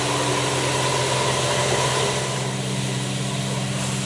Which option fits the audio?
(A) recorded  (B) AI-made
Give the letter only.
A